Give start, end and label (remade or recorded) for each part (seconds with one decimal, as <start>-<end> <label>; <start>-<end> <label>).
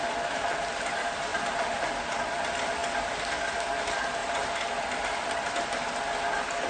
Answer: 0.0-1.3 recorded; 1.3-1.9 remade; 1.9-6.7 recorded